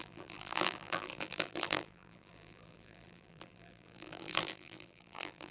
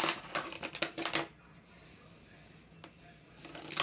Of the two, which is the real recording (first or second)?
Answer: second